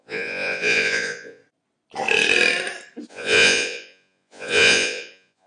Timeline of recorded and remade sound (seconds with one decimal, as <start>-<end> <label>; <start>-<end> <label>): 0.0-1.4 remade; 1.4-3.1 recorded; 3.1-5.5 remade